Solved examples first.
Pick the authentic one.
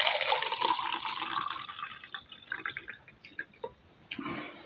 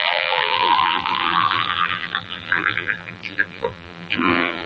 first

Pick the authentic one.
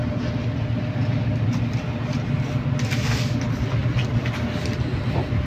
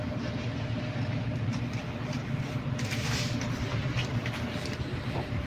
first